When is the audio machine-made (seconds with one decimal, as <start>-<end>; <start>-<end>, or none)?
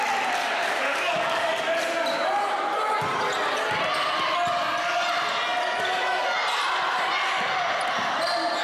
0.4-1.5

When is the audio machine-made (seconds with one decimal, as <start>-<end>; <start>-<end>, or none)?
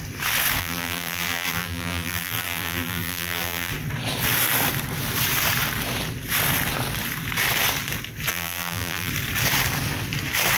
0.6-3.7; 8.3-9.1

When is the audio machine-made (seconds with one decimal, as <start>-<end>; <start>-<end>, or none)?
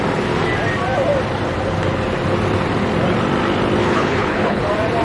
3.8-4.6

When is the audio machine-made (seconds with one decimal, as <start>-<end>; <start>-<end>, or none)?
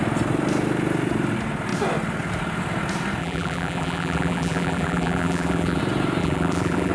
3.2-5.8; 6.2-6.9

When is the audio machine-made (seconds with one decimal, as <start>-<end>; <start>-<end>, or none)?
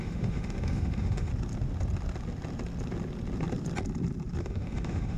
0.0-1.3; 4.4-5.2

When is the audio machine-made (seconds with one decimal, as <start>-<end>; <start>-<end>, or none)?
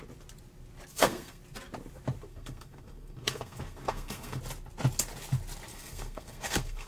0.9-1.4; 2.3-4.4; 5.7-6.9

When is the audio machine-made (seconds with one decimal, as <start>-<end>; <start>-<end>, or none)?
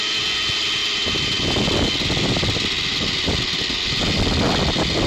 none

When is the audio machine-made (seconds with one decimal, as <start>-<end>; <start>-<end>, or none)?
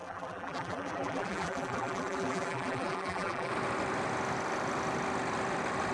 0.0-3.5